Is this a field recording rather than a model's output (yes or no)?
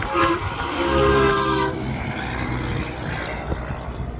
no